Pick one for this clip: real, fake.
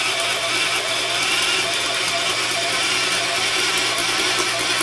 real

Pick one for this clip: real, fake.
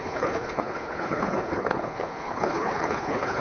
fake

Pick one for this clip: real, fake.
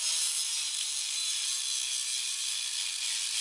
real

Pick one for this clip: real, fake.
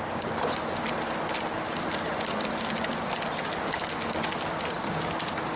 real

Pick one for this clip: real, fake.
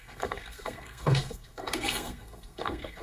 fake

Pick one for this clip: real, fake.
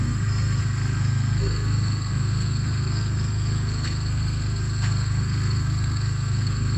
fake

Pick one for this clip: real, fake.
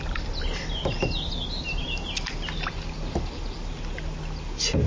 real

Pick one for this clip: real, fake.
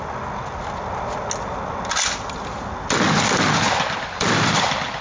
real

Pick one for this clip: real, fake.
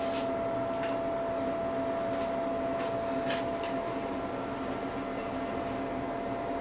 real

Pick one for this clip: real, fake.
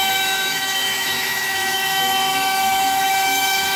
fake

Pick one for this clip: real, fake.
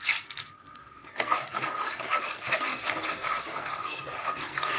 fake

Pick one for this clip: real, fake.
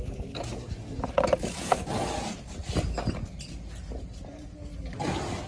real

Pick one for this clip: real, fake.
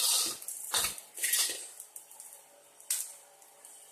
real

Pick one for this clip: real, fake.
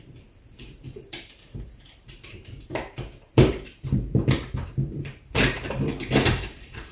fake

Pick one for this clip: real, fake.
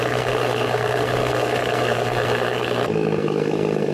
fake